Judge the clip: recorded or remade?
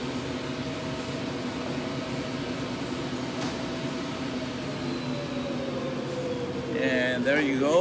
recorded